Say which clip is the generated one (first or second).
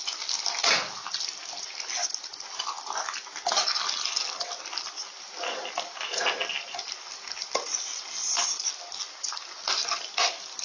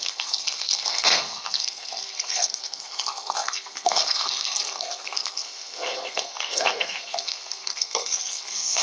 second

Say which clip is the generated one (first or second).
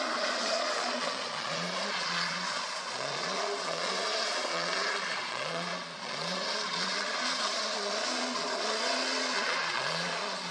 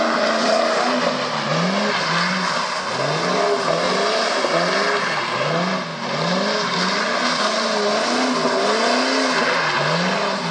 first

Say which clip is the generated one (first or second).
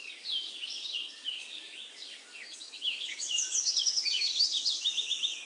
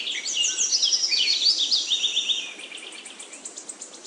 first